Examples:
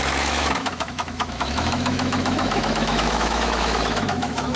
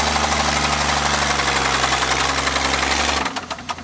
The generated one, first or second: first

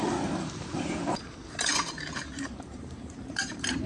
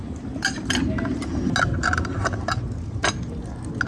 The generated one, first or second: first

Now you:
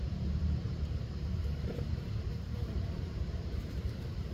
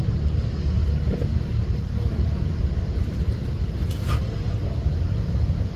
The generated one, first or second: first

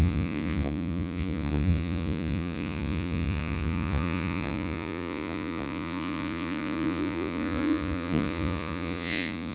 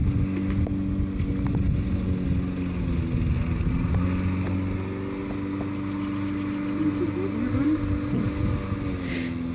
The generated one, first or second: first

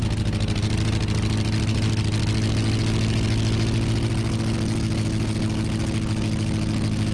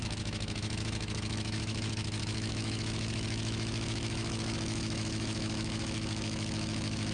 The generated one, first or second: second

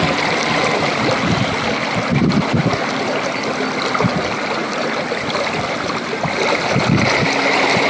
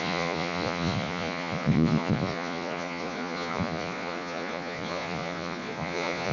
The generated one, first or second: second